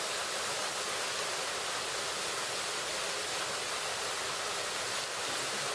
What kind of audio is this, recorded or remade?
recorded